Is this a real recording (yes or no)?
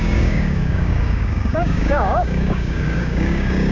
no